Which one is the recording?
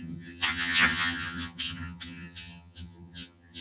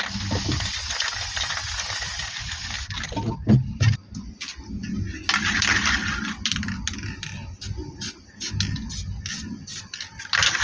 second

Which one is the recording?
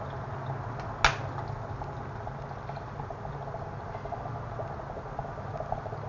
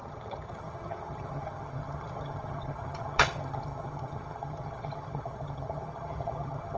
first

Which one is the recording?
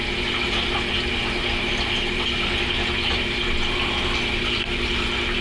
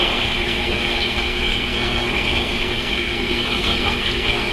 first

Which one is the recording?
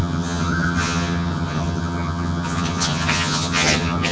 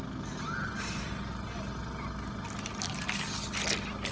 second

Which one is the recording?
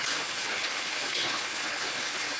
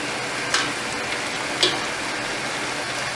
second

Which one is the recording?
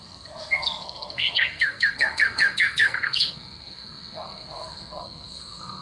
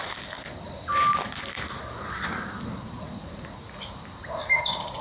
second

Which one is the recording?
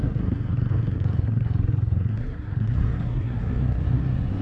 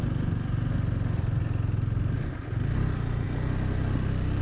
second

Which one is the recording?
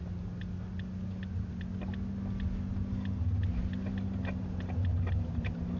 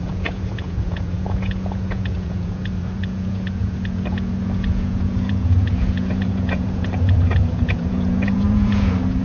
first